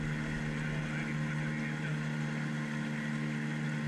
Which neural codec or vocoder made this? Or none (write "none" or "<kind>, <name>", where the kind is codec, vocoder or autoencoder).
none